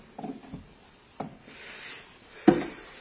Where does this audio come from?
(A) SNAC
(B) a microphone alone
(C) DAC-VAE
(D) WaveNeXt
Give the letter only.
B